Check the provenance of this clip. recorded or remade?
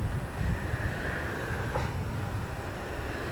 recorded